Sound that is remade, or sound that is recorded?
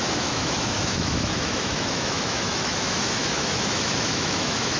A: remade